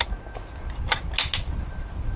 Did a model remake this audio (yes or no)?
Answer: no